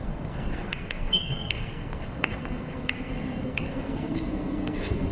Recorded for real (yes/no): no